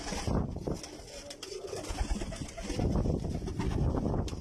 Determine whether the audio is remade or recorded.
recorded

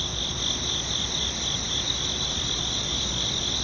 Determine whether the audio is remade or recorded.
recorded